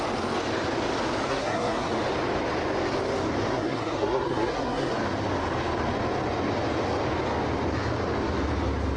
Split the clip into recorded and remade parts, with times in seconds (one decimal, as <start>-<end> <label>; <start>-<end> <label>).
0.0-1.3 recorded; 1.3-1.9 remade; 1.9-3.5 recorded; 3.5-4.9 remade; 4.9-9.0 recorded